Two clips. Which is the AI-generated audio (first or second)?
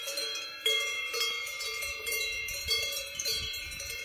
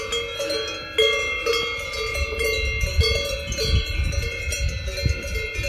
first